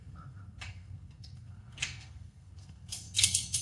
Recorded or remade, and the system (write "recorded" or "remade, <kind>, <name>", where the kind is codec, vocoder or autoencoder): remade, codec, SNAC